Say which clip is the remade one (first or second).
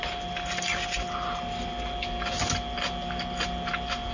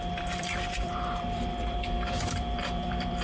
second